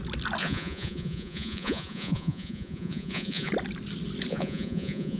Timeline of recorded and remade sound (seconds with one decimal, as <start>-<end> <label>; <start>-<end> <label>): 0.0-0.4 recorded; 0.4-3.5 remade; 3.5-4.3 recorded; 4.3-5.2 remade